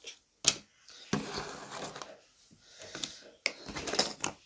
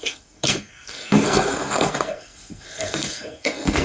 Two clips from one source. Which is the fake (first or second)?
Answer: second